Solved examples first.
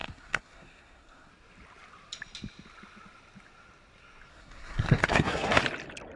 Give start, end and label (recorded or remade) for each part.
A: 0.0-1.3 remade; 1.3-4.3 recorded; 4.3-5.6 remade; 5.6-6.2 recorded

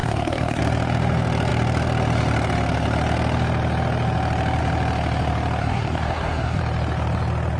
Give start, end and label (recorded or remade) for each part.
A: 0.0-0.6 remade; 0.6-5.6 recorded; 5.6-6.6 remade; 6.6-7.6 recorded

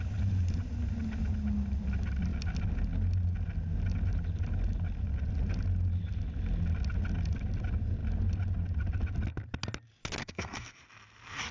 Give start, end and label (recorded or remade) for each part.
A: 0.0-10.2 recorded; 10.2-10.8 remade; 10.8-11.5 recorded

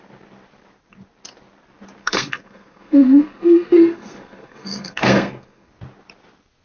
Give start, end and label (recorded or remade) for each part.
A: 0.0-2.0 recorded; 2.0-5.7 remade; 5.7-6.6 recorded

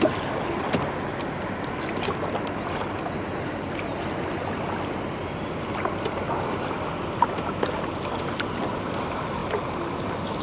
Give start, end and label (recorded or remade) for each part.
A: 0.0-10.4 recorded

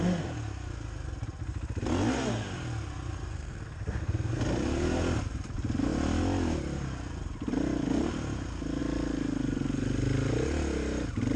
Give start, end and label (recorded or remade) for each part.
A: 0.0-3.3 recorded; 3.3-4.4 remade; 4.4-11.4 recorded

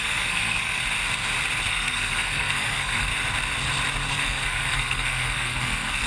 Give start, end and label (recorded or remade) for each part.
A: 0.0-0.8 remade; 0.8-1.7 recorded; 1.7-3.1 remade; 3.1-4.1 recorded; 4.1-6.1 remade

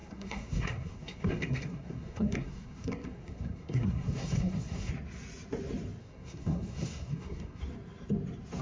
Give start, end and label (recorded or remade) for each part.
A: 0.0-4.9 remade; 4.9-6.0 recorded; 6.0-7.6 remade; 7.6-8.6 recorded